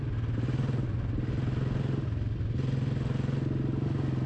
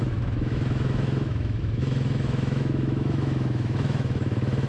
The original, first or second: first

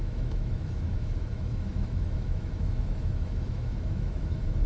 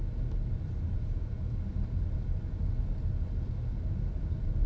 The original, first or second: second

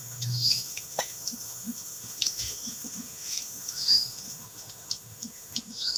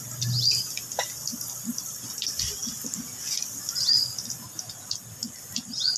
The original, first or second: second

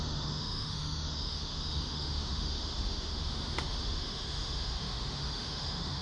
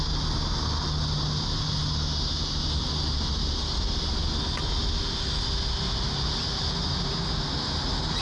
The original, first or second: second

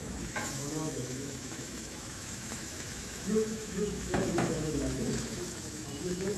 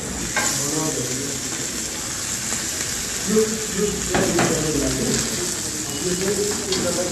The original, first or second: second